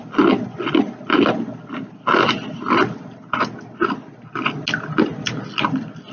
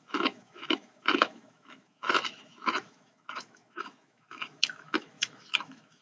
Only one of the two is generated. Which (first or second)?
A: second